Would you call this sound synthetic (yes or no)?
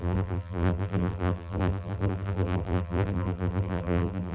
yes